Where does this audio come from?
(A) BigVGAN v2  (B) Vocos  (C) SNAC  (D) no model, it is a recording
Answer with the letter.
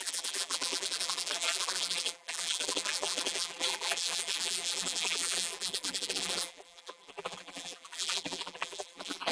A